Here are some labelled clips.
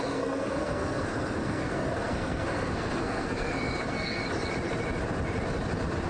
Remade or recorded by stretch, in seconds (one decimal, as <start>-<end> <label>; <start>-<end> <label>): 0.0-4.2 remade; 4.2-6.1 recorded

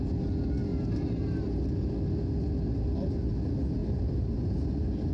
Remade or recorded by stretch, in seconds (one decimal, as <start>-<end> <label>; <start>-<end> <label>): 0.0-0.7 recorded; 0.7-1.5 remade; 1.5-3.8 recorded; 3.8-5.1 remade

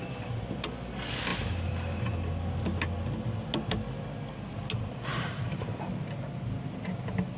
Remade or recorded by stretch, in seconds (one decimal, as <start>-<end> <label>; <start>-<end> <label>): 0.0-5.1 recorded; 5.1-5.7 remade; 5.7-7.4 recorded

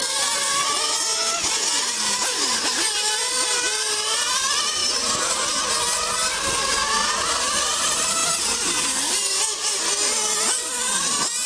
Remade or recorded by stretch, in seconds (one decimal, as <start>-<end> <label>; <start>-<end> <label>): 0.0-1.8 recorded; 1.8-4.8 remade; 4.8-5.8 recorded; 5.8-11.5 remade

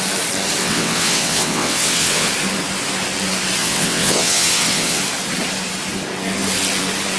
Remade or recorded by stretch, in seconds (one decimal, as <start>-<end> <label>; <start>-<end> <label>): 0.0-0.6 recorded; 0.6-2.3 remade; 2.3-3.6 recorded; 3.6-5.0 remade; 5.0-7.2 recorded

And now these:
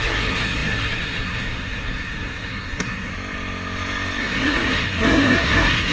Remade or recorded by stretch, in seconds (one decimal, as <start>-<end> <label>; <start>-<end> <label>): 0.0-3.1 remade; 3.1-4.2 recorded; 4.2-5.9 remade